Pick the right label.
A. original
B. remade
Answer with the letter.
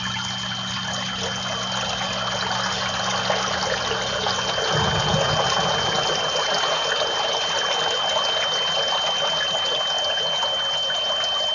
A